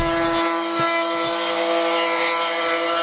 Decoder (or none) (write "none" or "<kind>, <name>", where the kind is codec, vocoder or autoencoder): none